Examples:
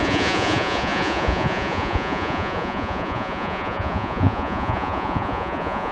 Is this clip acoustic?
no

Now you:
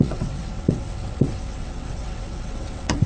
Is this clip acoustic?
no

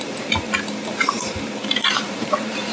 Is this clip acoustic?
no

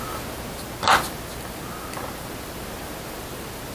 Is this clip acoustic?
yes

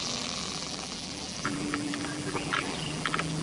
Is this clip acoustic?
no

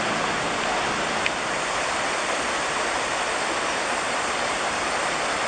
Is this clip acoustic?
yes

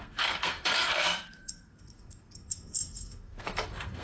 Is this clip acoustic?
no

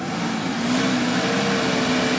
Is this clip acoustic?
yes